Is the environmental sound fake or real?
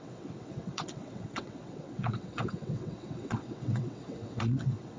fake